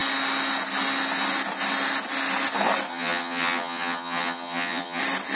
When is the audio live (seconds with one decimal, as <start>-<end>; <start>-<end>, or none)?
0.0-2.9; 5.0-5.4